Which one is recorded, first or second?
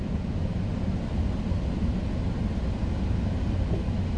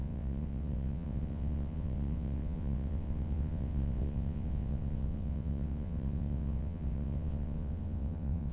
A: first